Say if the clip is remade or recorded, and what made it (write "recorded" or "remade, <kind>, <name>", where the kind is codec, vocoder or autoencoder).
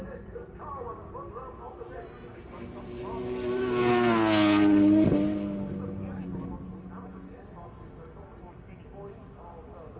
recorded